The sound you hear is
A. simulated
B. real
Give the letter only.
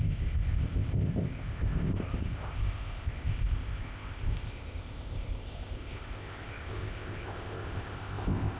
A